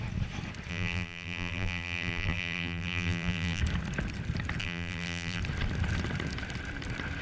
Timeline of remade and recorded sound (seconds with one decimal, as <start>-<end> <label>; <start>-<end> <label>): 0.0-0.7 recorded; 0.7-3.6 remade; 3.6-4.6 recorded; 4.6-5.4 remade; 5.4-7.2 recorded